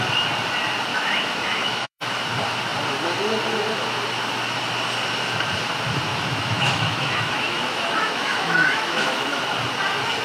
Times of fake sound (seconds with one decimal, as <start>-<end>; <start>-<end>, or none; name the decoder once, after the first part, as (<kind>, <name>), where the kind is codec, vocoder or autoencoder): 0.9-2.1 (autoencoder, DAC-VAE); 6.1-9.4